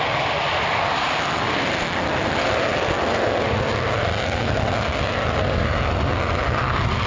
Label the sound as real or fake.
real